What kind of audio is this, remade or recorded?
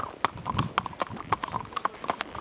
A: recorded